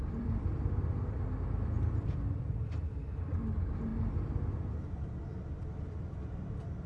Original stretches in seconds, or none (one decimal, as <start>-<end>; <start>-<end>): 0.5-2.5; 3.9-5.7